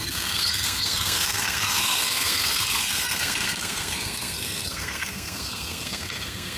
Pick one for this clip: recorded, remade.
remade